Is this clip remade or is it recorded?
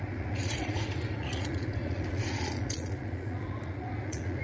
remade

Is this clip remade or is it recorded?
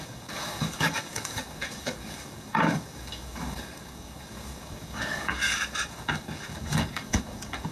remade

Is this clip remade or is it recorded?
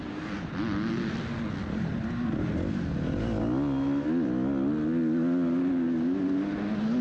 recorded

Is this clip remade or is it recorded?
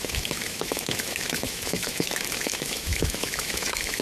remade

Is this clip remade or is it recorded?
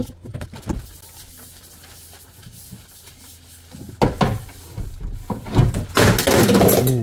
recorded